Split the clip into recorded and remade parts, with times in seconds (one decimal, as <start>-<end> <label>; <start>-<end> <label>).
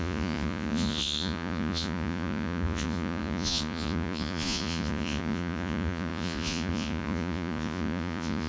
0.0-8.5 remade